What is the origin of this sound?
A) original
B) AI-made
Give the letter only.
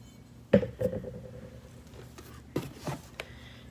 A